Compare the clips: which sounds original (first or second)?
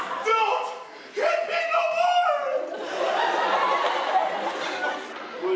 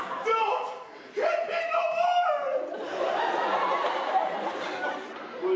first